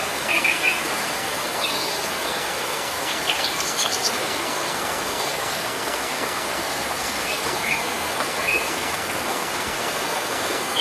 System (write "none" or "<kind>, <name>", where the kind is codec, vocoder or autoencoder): codec, SNAC